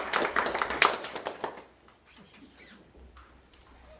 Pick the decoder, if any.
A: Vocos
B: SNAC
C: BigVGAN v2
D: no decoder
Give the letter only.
D